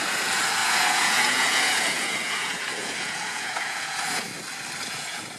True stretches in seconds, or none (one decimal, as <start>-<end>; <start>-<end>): 4.3-4.9